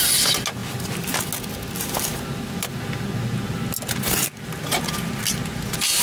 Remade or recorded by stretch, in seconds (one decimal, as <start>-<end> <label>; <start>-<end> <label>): 0.0-0.6 recorded; 0.6-1.2 remade; 1.2-6.0 recorded